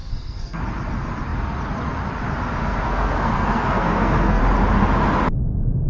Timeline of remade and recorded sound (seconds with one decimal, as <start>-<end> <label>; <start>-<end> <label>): 0.0-0.6 remade; 0.6-2.6 recorded; 2.6-4.4 remade; 4.4-5.9 recorded